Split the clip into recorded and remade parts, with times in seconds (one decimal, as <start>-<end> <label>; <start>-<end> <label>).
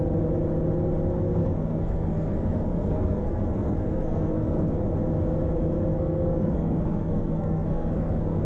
0.0-1.4 recorded; 1.4-4.7 remade; 4.7-5.9 recorded; 5.9-8.4 remade